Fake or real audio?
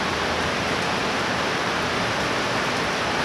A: real